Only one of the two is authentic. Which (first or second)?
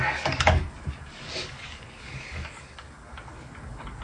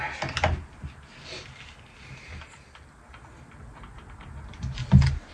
second